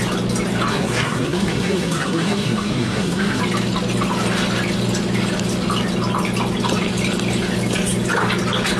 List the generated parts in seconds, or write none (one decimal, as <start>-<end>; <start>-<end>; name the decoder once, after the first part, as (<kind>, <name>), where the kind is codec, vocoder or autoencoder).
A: 0.7-3.4 (codec, SNAC)